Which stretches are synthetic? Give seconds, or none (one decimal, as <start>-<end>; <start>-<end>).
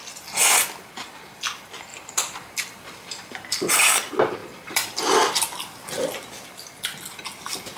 1.9-3.7; 4.4-7.2